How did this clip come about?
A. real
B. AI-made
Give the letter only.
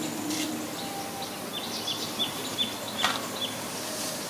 A